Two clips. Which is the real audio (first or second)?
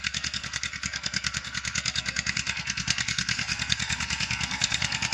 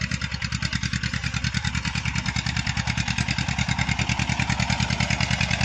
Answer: second